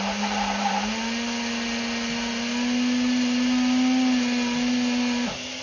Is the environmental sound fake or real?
real